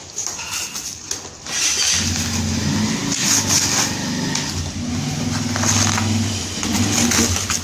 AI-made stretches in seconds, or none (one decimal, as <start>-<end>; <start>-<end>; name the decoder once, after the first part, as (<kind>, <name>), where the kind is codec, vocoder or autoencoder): none